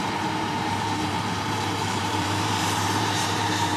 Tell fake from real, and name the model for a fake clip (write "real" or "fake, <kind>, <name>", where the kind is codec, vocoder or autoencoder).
fake, vocoder, BigVGAN v2